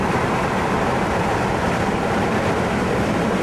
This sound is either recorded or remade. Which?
remade